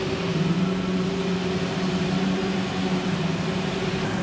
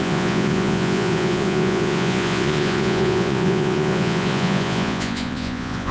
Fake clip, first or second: second